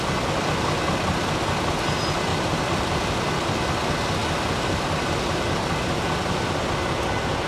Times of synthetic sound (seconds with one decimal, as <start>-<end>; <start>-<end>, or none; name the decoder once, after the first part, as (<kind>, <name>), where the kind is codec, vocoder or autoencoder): 2.3-3.1 (vocoder, BigVGAN v2); 4.2-5.8